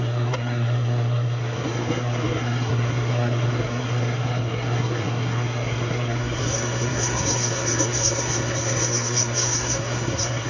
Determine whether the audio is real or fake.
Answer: fake